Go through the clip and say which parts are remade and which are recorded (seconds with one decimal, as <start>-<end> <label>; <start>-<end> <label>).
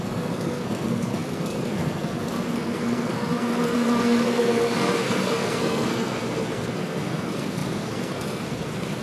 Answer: 0.0-9.0 remade